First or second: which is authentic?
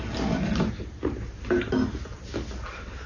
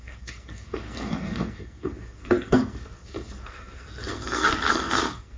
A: first